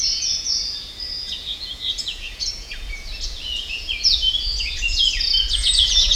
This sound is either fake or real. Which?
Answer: fake